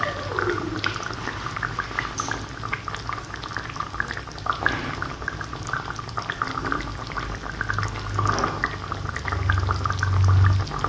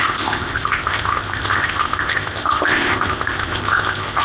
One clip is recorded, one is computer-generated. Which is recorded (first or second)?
first